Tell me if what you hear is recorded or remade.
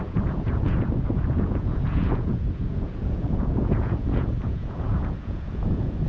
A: remade